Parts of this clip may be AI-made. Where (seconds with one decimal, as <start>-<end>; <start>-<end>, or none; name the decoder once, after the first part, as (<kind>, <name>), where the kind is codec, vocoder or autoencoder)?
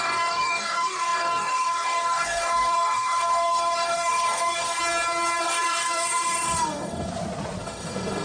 0.0-4.8 (codec, DAC); 5.4-7.1; 7.6-8.2